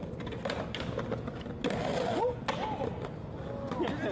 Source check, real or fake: real